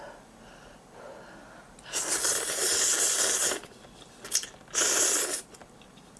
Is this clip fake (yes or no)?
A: no